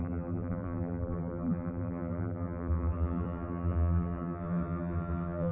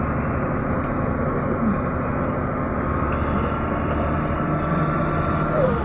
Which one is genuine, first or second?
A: second